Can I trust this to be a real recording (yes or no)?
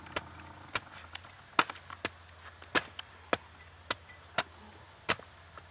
yes